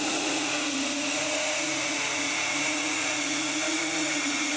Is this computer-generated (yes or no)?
yes